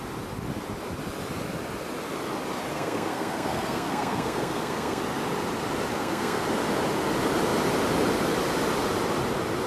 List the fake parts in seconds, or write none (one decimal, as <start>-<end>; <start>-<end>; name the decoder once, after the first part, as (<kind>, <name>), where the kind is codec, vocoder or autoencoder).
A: 2.7-5.0 (codec, SNAC); 5.9-6.4